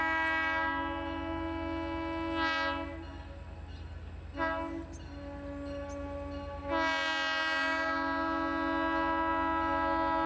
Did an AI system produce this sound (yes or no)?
no